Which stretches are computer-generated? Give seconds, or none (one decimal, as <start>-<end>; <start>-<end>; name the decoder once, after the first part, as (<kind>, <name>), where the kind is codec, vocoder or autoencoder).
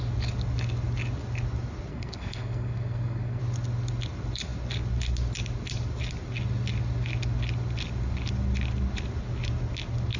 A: 1.9-3.4 (codec, SNAC)